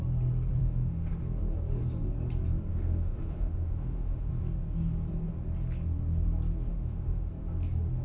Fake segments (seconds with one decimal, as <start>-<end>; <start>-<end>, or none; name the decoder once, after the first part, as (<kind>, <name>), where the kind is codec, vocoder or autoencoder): 0.6-1.1 (autoencoder, DAC-VAE); 2.7-4.3; 6.7-7.3